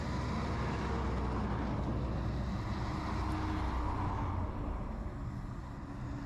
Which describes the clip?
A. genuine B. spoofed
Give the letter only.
A